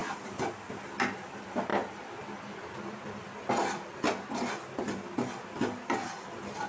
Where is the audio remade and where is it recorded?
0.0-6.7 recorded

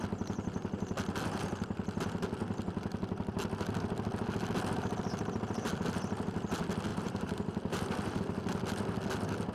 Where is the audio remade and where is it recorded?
0.0-6.9 recorded; 6.9-8.2 remade; 8.2-9.5 recorded

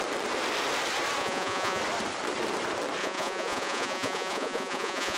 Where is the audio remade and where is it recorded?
0.0-1.2 recorded; 1.2-1.8 remade; 1.8-3.0 recorded; 3.0-5.2 remade

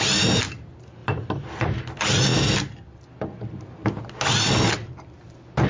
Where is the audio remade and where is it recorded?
0.0-1.0 recorded; 1.0-1.8 remade; 1.8-2.3 recorded; 2.3-3.2 remade; 3.2-5.7 recorded

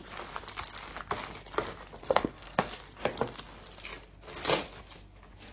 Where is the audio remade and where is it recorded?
0.0-2.0 recorded; 2.0-2.6 remade; 2.6-5.5 recorded

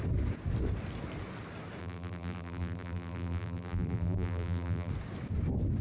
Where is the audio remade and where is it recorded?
0.0-1.8 recorded; 1.8-4.9 remade; 4.9-5.8 recorded